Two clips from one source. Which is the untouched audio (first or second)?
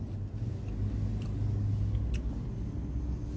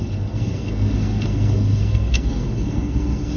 first